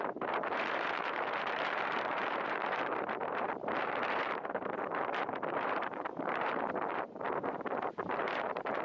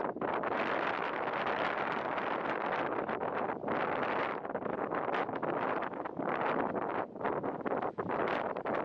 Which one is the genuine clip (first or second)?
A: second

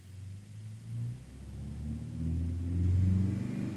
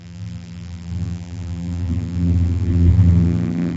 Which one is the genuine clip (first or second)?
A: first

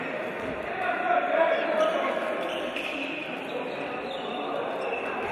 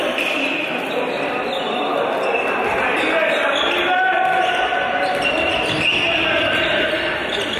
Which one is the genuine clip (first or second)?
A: second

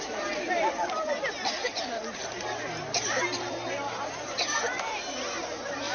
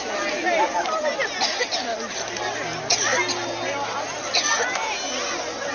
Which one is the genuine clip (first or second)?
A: second